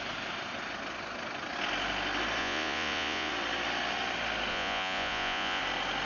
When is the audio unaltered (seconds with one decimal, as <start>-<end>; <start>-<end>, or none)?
0.0-2.4; 3.3-4.5; 5.6-6.1